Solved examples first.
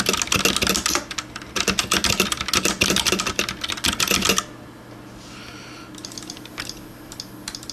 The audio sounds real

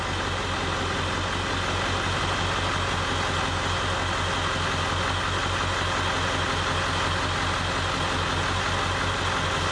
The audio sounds real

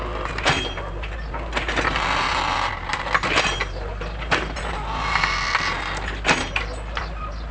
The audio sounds real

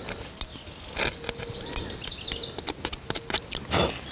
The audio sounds real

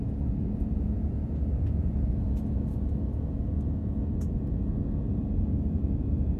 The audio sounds fake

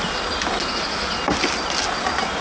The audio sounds real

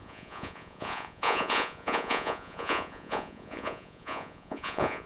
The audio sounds fake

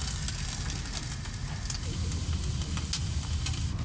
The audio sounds real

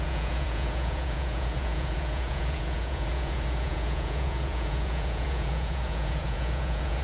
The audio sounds fake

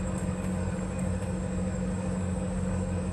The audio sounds fake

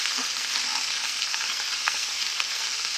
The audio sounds fake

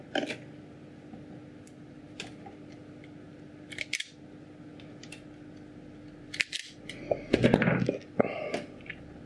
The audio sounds real